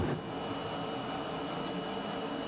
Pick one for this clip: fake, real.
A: real